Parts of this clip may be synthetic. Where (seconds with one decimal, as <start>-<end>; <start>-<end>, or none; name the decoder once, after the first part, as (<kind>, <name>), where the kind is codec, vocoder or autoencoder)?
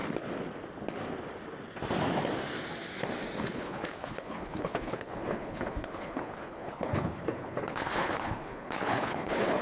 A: 3.4-9.6 (codec, HILCodec)